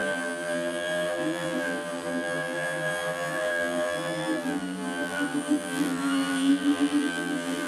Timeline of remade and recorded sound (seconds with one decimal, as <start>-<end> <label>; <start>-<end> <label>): 0.0-7.7 remade